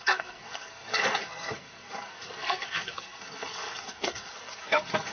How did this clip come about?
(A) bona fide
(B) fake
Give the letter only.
B